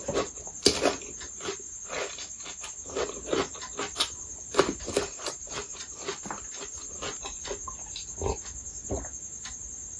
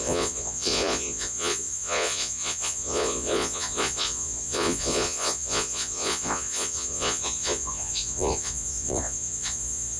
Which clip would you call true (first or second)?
first